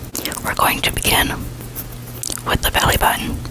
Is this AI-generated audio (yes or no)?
no